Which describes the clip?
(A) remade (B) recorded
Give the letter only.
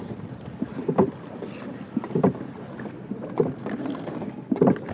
B